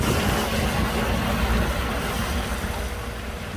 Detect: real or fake real